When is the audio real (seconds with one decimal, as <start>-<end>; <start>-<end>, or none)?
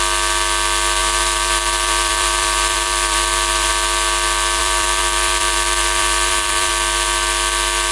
0.0-1.0; 3.7-4.6; 6.7-7.9